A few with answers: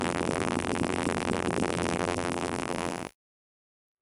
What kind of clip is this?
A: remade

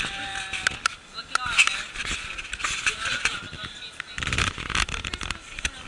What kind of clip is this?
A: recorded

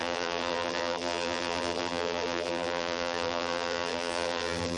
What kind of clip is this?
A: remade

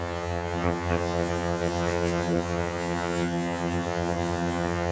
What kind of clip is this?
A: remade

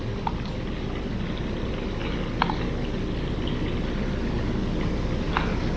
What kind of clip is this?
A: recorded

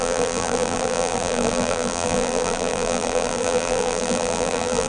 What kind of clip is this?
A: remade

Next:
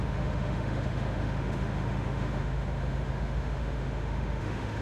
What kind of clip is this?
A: remade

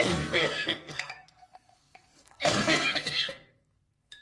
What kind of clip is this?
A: remade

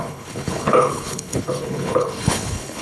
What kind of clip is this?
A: remade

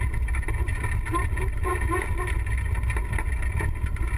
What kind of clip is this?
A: recorded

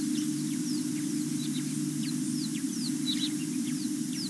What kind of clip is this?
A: recorded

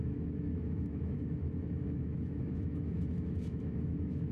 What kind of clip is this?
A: remade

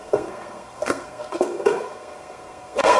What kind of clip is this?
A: remade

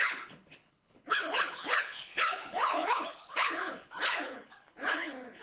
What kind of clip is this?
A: remade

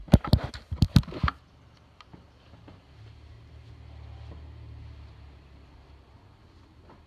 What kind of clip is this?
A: recorded